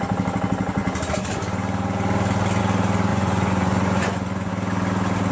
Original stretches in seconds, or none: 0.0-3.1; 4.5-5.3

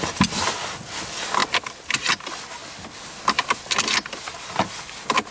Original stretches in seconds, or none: 0.0-5.3